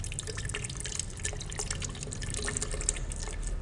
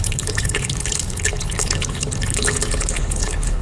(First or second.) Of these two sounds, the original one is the first